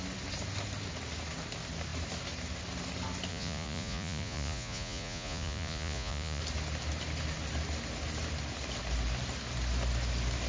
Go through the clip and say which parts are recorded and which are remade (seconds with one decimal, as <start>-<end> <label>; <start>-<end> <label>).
0.0-3.3 recorded; 3.3-6.4 remade; 6.4-10.5 recorded